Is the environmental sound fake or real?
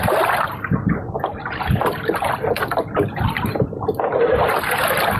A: real